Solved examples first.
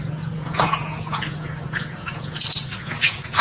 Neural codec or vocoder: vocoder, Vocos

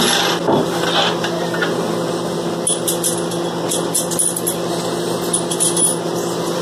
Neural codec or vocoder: none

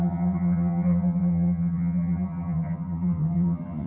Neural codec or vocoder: vocoder, HiFi-GAN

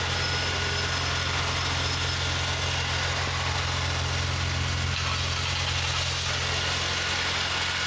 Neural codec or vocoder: none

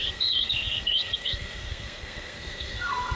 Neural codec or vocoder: codec, SNAC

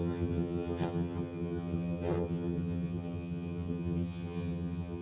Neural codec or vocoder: vocoder, HiFi-GAN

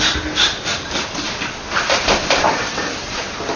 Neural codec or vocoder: vocoder, BigVGAN v2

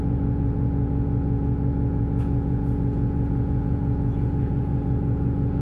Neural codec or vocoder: vocoder, Vocos